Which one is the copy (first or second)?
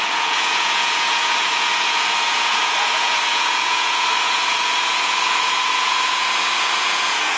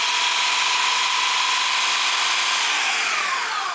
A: first